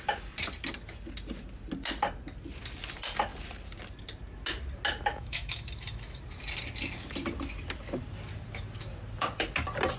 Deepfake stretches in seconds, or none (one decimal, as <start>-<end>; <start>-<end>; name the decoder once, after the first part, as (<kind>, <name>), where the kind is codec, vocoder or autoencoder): 5.1-6.2 (autoencoder, DAC-VAE)